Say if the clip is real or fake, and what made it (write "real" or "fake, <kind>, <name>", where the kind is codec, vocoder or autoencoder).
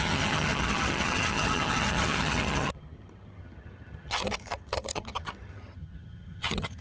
fake, vocoder, HiFi-GAN